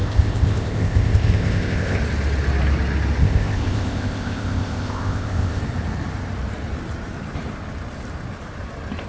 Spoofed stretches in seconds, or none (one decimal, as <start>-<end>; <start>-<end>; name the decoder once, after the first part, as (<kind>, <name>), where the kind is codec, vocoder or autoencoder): 0.0-2.0 (codec, ZipCodec); 3.2-5.6